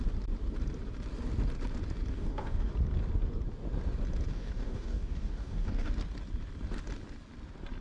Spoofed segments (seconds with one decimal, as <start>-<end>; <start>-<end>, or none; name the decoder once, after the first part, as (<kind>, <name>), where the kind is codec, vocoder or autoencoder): 2.1-2.7 (codec, DAC); 4.3-5.9